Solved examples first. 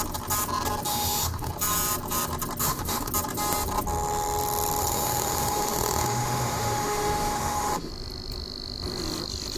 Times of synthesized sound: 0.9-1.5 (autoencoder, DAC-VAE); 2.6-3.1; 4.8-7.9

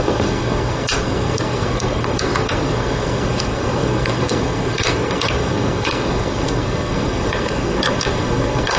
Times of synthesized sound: 0.0-8.8 (codec, SNAC)

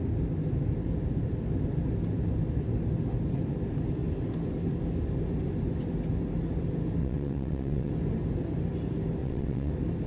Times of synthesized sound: 7.0-7.9 (vocoder, WaveNeXt); 9.2-9.7

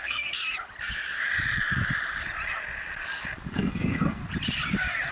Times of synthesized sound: 0.0-0.4 (codec, SNAC); 3.5-4.2

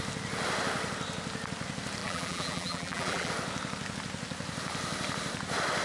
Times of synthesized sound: 2.0-3.3 (vocoder, BigVGAN v2)